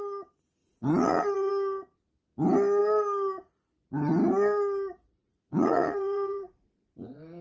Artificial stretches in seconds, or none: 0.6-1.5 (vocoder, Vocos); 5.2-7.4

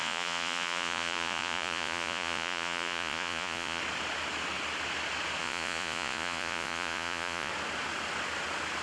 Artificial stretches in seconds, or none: 0.0-3.8 (vocoder, Vocos); 5.4-7.5

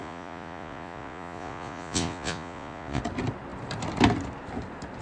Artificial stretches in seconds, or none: 0.0-3.0 (vocoder, Vocos)

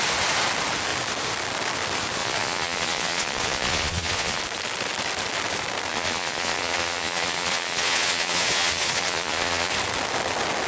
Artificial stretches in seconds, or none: 2.2-4.4 (vocoder, Vocos); 5.9-9.7